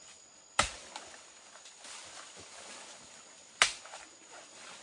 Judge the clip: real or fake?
real